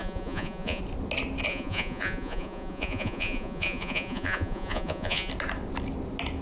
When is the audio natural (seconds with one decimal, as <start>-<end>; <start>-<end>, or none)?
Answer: 0.8-1.5; 5.3-6.4